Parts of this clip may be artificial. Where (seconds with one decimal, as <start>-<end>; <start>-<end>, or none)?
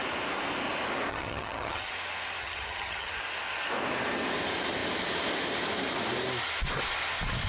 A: 1.1-1.9; 2.4-3.2